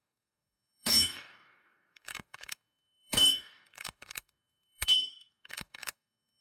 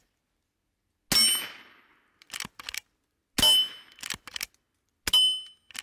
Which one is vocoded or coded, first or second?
first